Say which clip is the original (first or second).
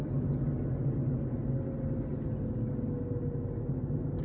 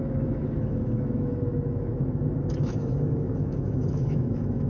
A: first